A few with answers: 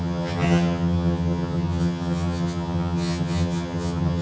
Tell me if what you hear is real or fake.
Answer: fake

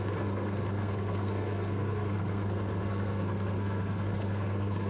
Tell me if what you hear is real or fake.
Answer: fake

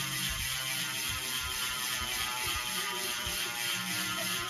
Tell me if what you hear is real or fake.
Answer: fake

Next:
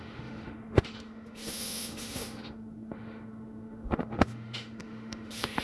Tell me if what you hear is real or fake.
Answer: fake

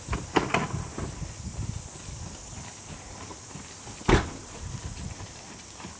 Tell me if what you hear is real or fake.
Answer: real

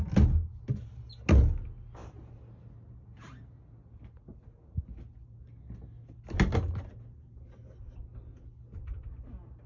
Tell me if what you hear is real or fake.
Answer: real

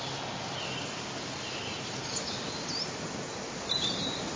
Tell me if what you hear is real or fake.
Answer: real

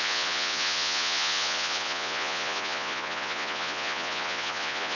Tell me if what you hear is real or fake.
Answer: fake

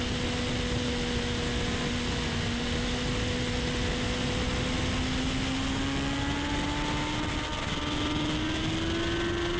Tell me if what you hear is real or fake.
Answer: real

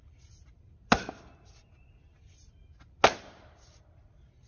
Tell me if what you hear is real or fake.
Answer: real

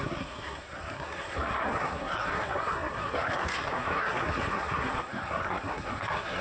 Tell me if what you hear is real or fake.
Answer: fake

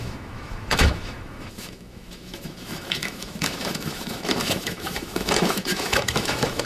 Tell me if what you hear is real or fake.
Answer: fake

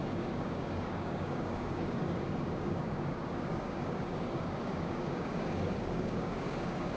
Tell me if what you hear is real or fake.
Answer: fake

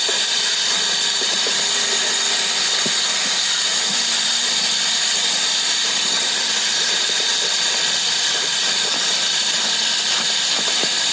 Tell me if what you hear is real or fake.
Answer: fake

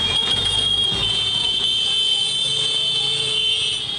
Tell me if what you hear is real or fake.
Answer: fake